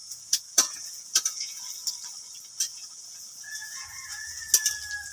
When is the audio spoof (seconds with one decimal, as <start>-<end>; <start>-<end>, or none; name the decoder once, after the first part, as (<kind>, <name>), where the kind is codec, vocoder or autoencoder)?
0.0-1.6 (vocoder, Vocos); 2.7-4.4